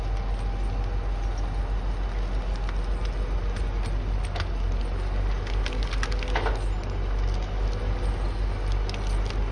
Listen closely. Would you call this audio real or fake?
real